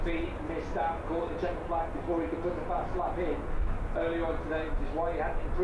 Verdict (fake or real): real